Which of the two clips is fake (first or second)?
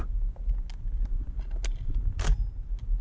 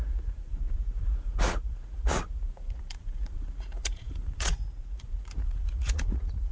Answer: second